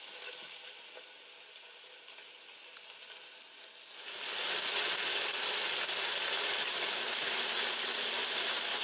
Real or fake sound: real